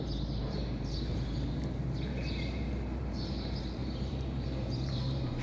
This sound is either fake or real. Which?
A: fake